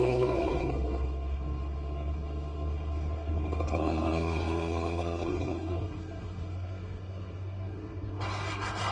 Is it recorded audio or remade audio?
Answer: remade